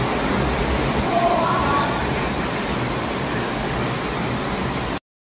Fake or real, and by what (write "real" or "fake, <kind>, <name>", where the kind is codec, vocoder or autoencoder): real